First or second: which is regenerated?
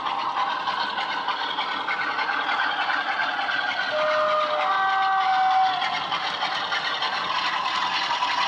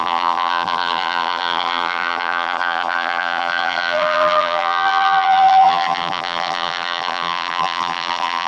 second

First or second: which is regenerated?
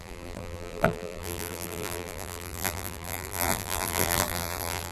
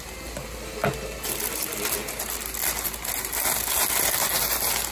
first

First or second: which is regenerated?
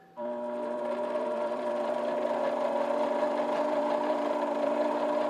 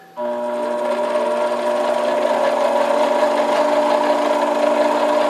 first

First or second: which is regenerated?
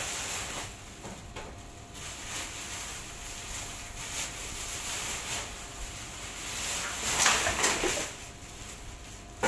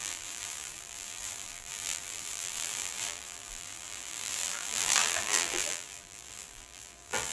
second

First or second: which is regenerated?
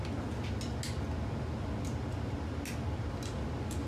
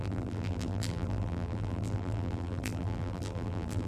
second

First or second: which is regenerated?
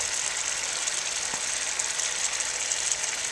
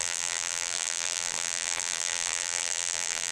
second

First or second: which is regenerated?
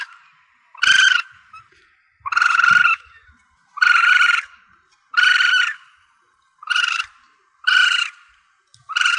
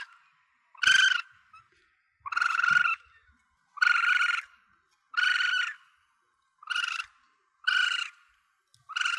first